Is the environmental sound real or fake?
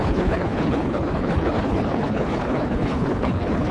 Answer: fake